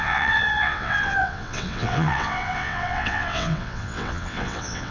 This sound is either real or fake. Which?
fake